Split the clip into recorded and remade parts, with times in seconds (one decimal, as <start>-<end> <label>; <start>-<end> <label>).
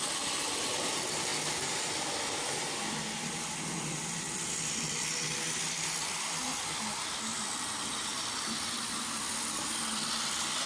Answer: 0.0-10.7 recorded